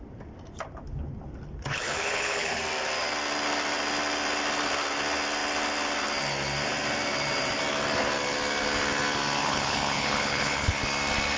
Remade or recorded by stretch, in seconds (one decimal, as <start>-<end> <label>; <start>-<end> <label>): 0.0-1.7 recorded; 1.7-2.6 remade; 2.6-9.4 recorded; 9.4-10.8 remade; 10.8-11.4 recorded